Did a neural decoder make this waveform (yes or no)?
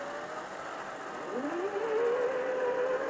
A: no